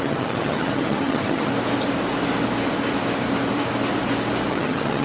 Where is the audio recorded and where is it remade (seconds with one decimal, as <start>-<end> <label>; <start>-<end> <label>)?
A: 0.0-1.5 remade; 1.5-4.5 recorded; 4.5-5.0 remade